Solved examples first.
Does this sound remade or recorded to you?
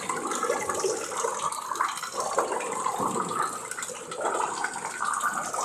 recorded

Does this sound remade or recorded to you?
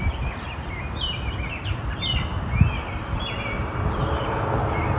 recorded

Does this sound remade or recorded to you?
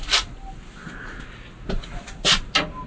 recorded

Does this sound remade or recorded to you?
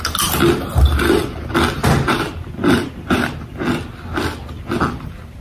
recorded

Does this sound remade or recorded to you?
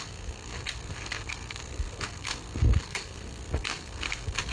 remade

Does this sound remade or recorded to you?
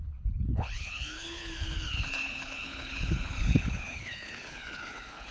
remade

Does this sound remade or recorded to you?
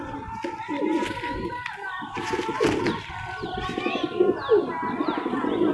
recorded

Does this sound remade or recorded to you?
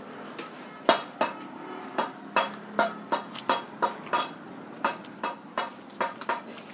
recorded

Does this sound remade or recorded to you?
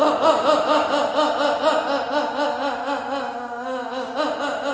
recorded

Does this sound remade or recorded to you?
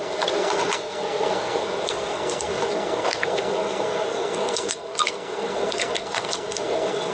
remade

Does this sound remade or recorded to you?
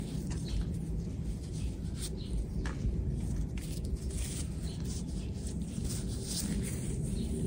recorded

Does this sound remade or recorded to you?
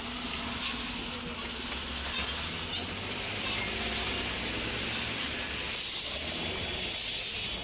recorded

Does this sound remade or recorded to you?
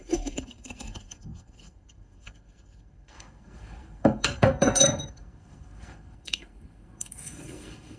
remade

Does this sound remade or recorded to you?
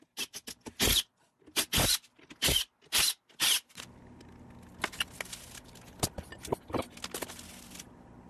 recorded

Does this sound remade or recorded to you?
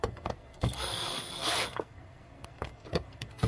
remade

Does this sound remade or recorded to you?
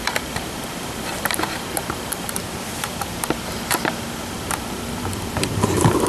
remade